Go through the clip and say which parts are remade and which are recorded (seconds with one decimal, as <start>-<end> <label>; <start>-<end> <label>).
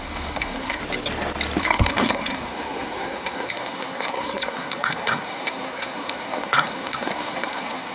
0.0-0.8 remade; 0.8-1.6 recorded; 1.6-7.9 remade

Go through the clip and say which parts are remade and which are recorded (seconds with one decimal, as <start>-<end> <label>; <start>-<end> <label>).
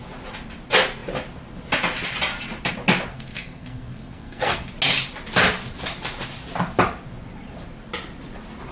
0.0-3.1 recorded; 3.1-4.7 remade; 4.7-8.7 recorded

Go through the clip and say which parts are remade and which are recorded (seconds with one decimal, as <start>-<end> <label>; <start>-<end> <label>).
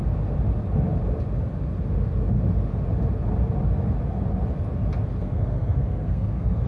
0.0-5.2 recorded; 5.2-6.7 remade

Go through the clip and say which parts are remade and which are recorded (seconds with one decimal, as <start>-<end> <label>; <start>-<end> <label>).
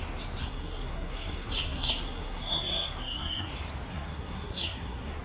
0.0-0.4 recorded; 0.4-3.5 remade; 3.5-3.9 recorded; 3.9-5.2 remade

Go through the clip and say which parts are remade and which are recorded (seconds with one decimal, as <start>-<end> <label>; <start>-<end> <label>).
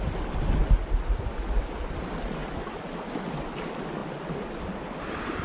0.0-5.4 recorded